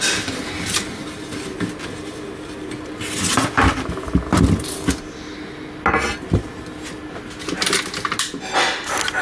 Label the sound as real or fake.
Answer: real